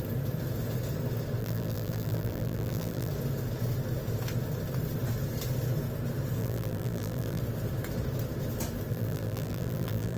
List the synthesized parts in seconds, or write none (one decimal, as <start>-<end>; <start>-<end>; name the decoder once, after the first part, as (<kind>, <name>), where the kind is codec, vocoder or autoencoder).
1.4-3.1 (vocoder, BigVGAN v2); 6.4-7.4; 8.9-10.2